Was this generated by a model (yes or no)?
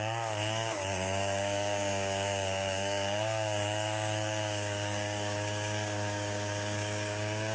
yes